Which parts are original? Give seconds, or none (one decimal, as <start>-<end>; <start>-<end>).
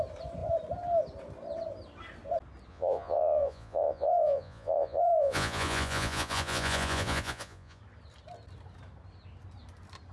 0.0-2.7; 7.8-10.1